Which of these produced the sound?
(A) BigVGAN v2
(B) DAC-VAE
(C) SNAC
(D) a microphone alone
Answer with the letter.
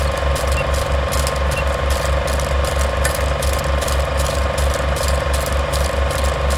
D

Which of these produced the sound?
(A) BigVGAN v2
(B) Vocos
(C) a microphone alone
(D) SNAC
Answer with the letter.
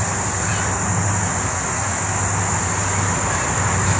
C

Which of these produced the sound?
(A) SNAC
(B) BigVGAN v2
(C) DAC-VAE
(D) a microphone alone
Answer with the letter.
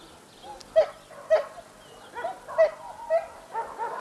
D